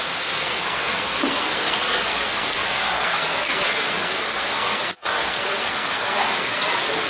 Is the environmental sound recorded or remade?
remade